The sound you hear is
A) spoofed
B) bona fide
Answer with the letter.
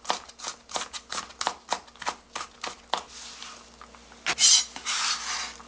B